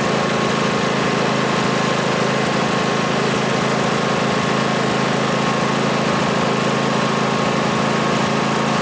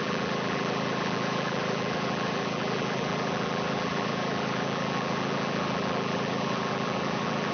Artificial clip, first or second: second